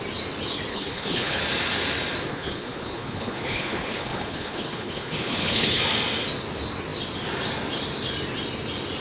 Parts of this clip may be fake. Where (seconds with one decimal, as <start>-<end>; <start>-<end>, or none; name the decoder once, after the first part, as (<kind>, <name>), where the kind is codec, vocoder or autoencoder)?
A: 0.7-1.4 (codec, HILCodec); 2.3-5.8